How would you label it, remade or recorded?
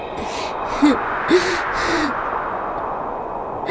remade